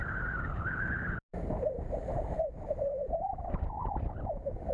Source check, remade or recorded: recorded